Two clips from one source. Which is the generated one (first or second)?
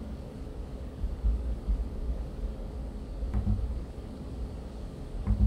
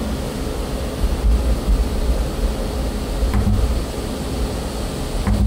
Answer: first